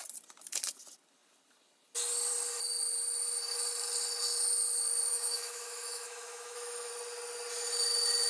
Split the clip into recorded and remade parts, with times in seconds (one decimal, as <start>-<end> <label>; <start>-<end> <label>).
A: 0.0-5.1 recorded; 5.1-6.9 remade; 6.9-8.3 recorded